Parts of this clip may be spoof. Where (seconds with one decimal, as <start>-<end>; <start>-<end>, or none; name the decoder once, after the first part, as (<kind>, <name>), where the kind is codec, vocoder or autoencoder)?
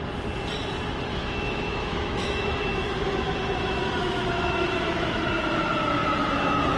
1.1-5.2 (autoencoder, DAC-VAE)